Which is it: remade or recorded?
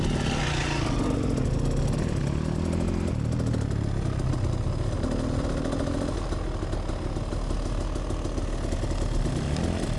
recorded